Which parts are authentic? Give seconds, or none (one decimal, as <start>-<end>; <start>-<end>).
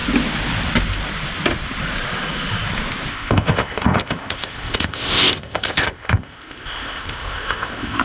0.0-3.1